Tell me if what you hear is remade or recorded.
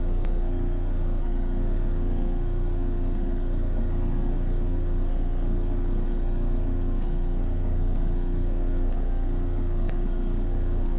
remade